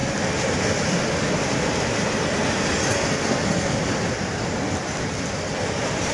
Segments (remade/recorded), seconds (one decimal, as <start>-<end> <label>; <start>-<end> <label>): 0.0-2.9 recorded; 2.9-3.8 remade; 3.8-6.1 recorded